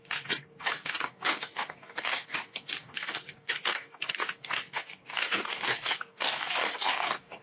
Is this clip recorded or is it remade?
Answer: remade